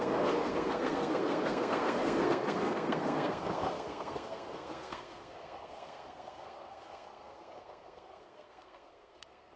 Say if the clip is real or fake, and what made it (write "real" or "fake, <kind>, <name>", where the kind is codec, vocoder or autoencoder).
fake, codec, SNAC